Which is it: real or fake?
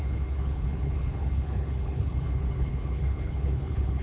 fake